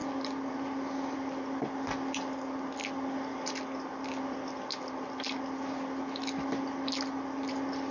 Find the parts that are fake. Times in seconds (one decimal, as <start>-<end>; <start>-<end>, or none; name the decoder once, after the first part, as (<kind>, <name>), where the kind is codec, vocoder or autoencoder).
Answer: none